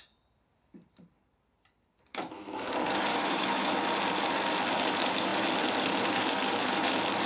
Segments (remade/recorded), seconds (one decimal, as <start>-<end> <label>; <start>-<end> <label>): 0.0-2.1 recorded; 2.1-2.7 remade; 2.7-3.1 recorded; 3.1-3.7 remade; 3.7-7.3 recorded